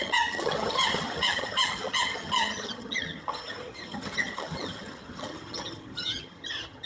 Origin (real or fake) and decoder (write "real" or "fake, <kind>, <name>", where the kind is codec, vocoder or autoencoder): fake, vocoder, HiFi-GAN